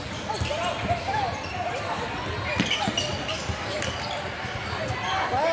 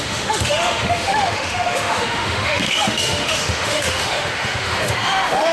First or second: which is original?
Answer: first